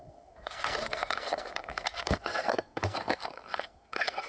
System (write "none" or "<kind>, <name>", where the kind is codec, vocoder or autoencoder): codec, SNAC